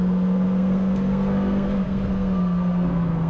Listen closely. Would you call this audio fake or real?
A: fake